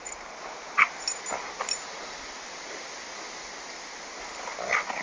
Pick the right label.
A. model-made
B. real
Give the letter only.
B